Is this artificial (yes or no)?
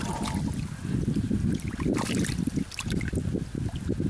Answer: no